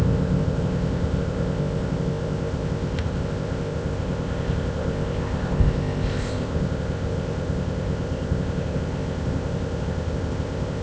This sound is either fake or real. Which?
fake